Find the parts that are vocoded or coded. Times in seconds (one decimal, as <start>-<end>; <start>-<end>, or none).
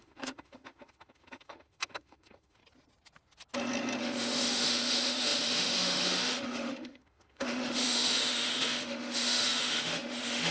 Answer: 0.0-2.6; 4.0-10.5